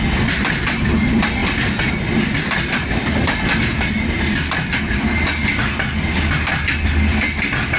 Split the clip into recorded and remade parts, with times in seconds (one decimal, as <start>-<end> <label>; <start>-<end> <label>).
0.0-7.8 recorded